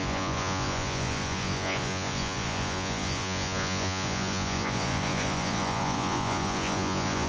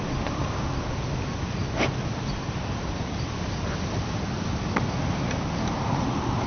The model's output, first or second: first